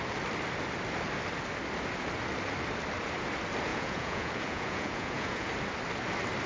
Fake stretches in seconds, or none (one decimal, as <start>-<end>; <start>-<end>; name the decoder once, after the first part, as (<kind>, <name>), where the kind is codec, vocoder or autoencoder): 3.7-5.5 (vocoder, Vocos)